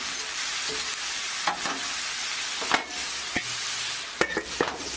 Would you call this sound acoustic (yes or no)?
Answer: yes